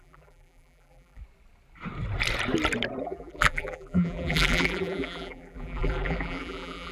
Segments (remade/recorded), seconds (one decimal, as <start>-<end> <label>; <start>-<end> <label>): 0.0-1.2 remade; 1.2-3.0 recorded; 3.0-6.9 remade